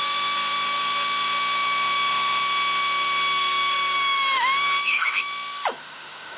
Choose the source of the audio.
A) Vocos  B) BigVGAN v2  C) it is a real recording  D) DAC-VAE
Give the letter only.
D